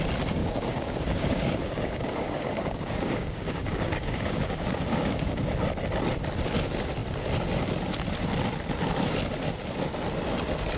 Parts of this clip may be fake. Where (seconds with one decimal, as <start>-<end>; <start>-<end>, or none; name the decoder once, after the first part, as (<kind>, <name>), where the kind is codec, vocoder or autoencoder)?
0.4-5.4 (codec, DAC)